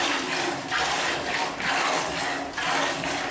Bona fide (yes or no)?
yes